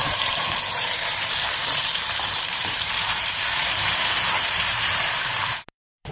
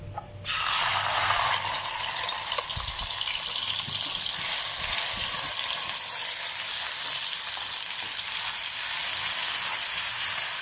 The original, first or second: second